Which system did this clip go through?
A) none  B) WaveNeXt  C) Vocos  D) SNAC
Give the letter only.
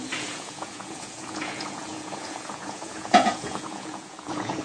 C